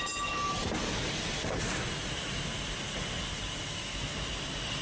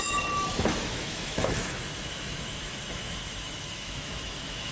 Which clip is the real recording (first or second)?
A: first